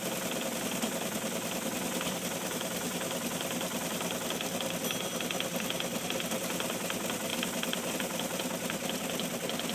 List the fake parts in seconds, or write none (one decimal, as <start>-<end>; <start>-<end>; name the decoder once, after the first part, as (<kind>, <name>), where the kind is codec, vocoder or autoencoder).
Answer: none